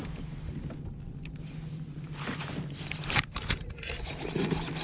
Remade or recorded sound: recorded